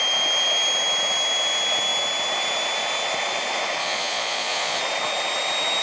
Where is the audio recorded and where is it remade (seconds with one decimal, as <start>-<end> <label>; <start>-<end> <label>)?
0.0-3.8 recorded; 3.8-4.8 remade; 4.8-5.8 recorded